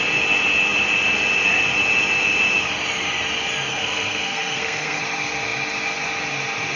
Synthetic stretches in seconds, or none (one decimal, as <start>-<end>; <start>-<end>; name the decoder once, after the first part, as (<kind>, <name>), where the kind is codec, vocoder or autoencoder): 3.7-5.0 (codec, SNAC)

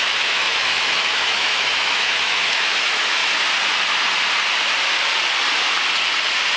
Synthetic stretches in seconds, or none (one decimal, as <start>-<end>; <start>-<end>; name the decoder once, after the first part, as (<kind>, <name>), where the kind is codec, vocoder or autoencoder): 0.0-3.2 (autoencoder, DAC-VAE)

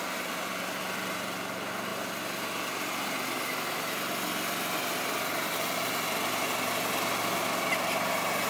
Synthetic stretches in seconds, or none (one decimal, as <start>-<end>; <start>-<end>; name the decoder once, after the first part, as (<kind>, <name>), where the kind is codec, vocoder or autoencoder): none

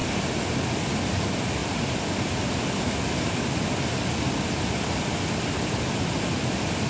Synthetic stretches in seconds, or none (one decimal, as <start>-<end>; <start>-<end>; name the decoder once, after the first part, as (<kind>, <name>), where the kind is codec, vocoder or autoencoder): 1.6-3.4 (vocoder, BigVGAN v2)

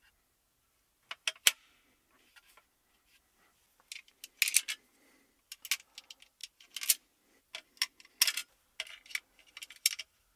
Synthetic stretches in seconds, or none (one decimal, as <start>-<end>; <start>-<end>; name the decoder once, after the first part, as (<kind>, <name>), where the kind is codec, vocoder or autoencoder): none

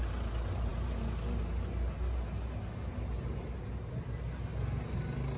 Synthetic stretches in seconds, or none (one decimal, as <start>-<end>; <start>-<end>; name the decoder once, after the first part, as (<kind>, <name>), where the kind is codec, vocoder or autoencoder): none

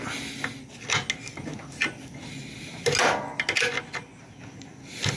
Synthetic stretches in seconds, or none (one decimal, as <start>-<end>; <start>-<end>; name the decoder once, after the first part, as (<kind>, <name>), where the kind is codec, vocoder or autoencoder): none